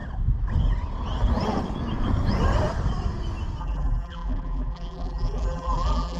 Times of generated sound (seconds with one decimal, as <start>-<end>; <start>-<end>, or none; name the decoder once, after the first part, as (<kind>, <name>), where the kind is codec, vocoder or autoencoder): 3.6-6.2 (vocoder, BigVGAN v2)